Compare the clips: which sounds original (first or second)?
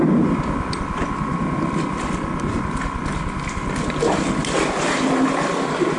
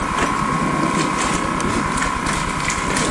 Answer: second